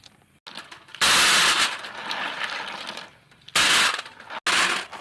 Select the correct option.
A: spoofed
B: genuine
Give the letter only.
B